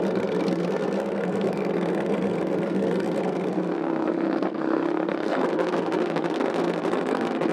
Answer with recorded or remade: remade